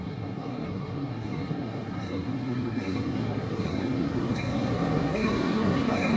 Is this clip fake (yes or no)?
yes